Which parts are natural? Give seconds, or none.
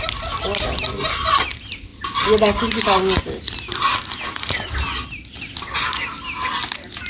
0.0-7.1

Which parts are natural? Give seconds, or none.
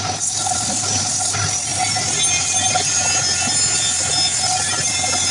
0.0-5.3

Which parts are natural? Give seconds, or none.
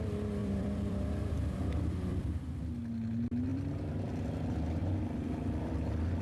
0.0-0.4; 2.3-3.5; 4.1-4.8; 5.7-6.2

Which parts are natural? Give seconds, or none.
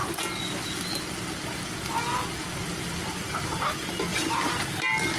0.0-4.1; 4.6-5.2